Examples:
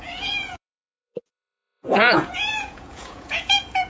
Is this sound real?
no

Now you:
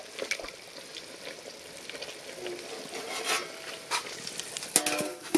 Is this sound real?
yes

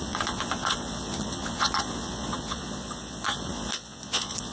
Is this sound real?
no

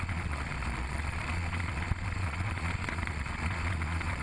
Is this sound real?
no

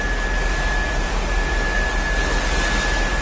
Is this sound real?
yes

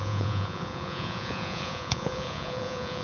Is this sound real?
no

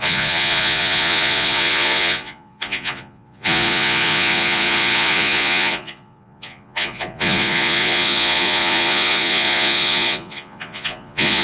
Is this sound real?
no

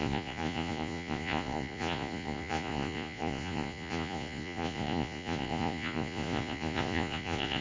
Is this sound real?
no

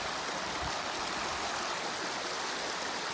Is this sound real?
yes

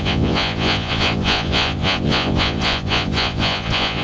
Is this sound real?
no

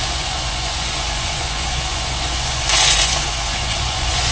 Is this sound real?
no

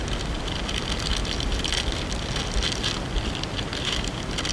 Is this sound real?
yes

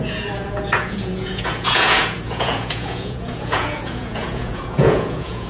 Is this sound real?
no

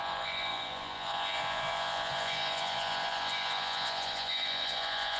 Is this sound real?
no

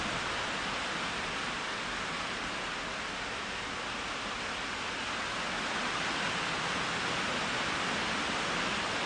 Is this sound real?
yes